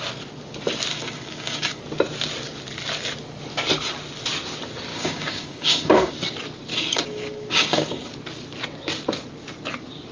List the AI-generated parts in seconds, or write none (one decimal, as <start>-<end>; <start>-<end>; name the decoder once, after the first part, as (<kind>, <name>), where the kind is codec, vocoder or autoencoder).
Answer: 0.9-1.8 (codec, DAC); 4.9-6.1; 6.7-8.1